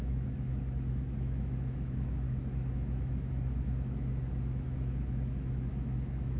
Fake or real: fake